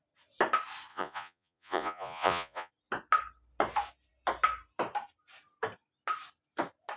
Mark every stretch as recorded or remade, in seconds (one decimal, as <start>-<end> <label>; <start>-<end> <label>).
0.0-0.9 recorded; 0.9-2.7 remade; 2.7-7.0 recorded